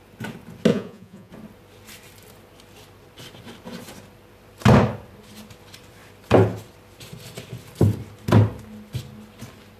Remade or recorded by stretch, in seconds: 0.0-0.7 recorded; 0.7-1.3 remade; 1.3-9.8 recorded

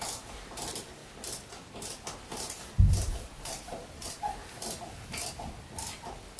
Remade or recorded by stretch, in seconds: 0.0-1.0 remade; 1.0-3.1 recorded; 3.1-4.4 remade; 4.4-6.4 recorded

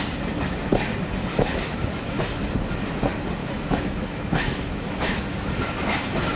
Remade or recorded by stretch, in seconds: 0.0-1.3 recorded; 1.3-2.2 remade; 2.2-3.4 recorded; 3.4-5.2 remade; 5.2-6.4 recorded

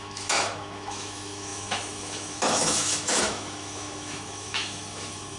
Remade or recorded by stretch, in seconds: 0.0-5.4 remade